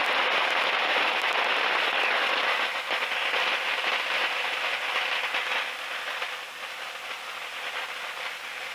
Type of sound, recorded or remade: recorded